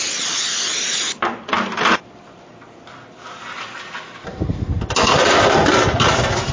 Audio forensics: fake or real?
fake